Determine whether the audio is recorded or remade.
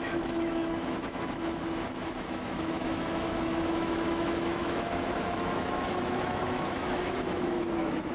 remade